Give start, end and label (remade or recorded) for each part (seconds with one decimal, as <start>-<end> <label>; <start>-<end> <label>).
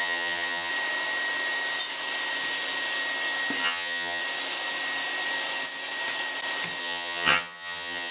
0.0-0.7 remade; 0.7-3.6 recorded; 3.6-4.2 remade; 4.2-6.8 recorded; 6.8-8.1 remade